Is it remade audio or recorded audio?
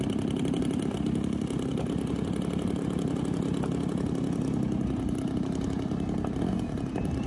recorded